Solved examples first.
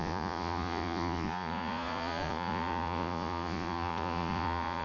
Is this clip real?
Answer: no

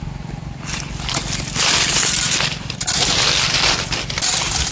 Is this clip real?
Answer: no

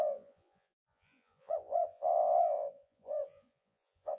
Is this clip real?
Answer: no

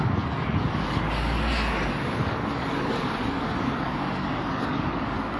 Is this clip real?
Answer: no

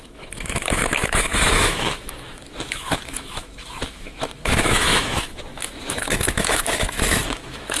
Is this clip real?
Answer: no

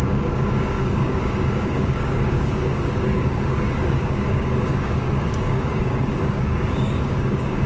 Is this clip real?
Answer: no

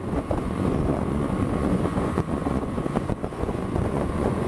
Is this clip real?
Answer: no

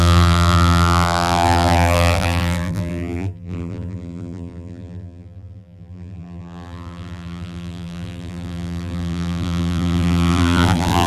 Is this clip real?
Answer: no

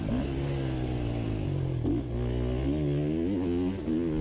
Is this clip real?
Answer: yes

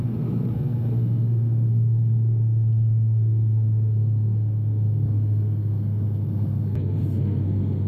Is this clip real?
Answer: no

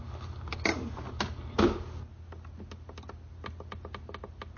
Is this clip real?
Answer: yes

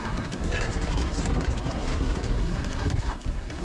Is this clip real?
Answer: no